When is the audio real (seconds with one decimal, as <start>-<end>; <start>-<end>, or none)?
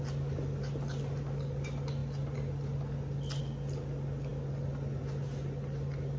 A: 0.0-6.2